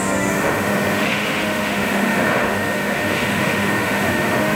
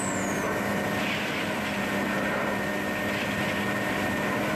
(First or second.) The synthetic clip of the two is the first